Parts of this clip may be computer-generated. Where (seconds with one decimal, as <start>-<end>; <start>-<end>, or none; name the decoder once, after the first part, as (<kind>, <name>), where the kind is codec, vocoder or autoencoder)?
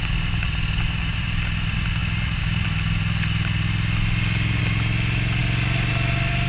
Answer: none